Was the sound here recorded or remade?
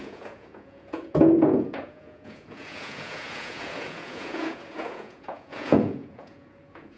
remade